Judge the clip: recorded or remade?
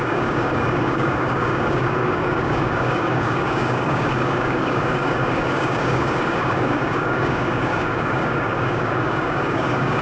remade